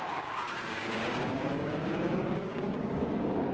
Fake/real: fake